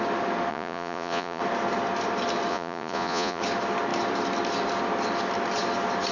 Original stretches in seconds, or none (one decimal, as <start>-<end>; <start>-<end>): 0.0-0.5; 1.4-2.5; 3.4-6.1